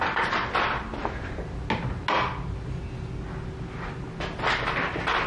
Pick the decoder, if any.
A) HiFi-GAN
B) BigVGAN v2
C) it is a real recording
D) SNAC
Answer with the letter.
C